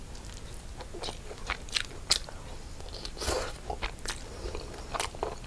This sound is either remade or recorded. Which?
recorded